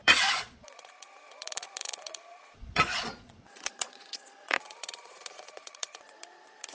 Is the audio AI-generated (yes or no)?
yes